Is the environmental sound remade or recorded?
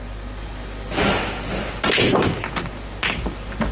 recorded